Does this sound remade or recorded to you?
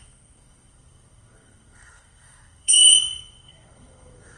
remade